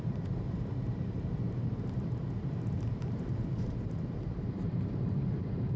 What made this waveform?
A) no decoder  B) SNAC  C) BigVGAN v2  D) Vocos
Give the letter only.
C